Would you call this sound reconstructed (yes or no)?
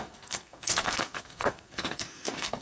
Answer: yes